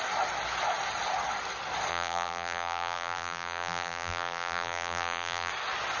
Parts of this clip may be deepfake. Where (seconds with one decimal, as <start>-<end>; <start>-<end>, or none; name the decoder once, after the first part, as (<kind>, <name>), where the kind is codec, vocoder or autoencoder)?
1.9-5.5 (vocoder, BigVGAN v2)